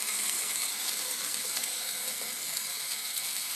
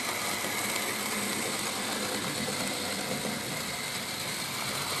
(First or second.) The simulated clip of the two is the first